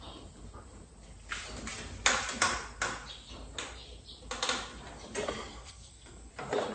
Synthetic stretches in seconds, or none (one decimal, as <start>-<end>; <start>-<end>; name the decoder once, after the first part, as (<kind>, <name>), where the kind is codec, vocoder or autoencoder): 5.5-6.3 (codec, SNAC)